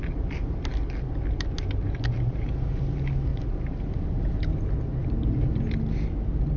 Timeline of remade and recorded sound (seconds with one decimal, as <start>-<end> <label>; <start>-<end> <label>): 0.0-3.3 recorded; 3.3-4.4 remade; 4.4-5.0 recorded; 5.0-5.6 remade; 5.6-6.6 recorded